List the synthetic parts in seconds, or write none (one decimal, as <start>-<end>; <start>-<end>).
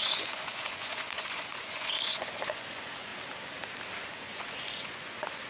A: 0.0-3.1; 4.1-5.5